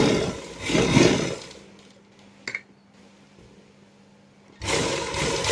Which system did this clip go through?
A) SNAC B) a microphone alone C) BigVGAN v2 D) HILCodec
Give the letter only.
B